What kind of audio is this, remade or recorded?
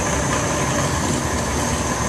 recorded